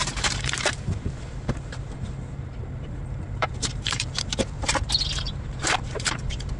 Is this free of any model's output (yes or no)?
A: no